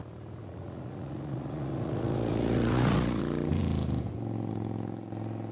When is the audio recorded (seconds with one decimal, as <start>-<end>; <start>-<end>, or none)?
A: 0.0-0.4; 3.2-5.5